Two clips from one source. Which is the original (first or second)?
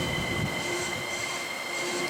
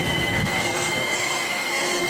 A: first